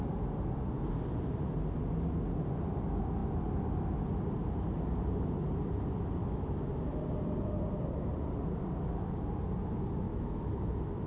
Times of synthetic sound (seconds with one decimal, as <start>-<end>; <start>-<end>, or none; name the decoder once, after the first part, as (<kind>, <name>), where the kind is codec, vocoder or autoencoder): 6.2-6.7 (autoencoder, DAC-VAE); 10.1-10.7